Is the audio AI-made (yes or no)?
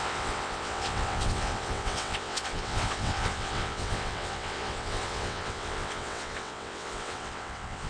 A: yes